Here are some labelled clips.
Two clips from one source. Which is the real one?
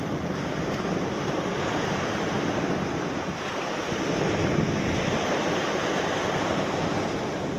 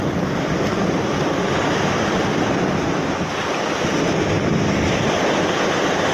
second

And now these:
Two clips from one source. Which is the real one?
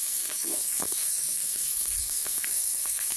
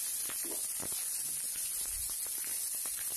second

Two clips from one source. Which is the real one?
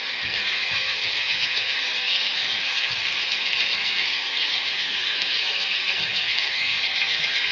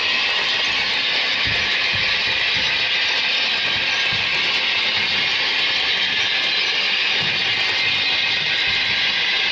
second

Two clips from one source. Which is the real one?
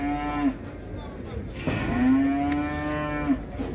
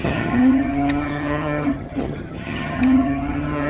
first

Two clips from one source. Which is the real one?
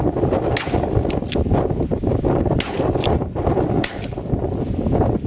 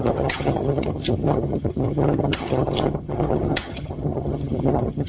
first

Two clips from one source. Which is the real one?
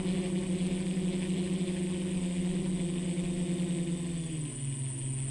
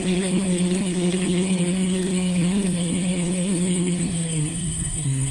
first